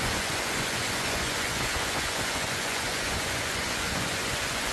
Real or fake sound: fake